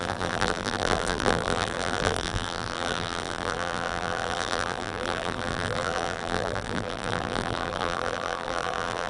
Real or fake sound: fake